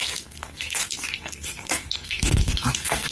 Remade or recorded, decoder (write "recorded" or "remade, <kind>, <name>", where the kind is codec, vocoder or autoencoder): remade, codec, SNAC